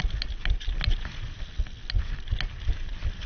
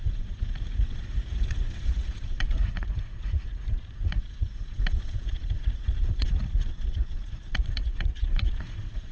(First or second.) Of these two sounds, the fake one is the second